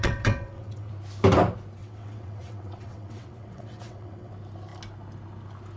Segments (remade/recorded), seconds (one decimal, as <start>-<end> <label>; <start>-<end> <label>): 0.0-0.9 remade; 0.9-1.8 recorded; 1.8-4.3 remade; 4.3-5.8 recorded